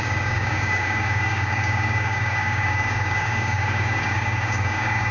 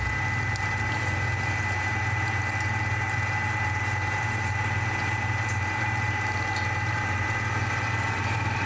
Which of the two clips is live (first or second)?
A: second